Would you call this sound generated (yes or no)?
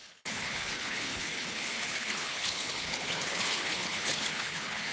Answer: yes